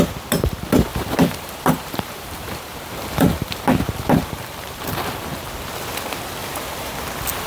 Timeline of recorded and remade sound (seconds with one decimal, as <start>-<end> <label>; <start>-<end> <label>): 0.0-0.9 recorded; 0.9-5.4 remade; 5.4-6.4 recorded; 6.4-6.9 remade; 6.9-7.5 recorded